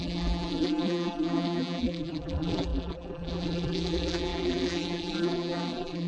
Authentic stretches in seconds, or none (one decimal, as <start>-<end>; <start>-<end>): none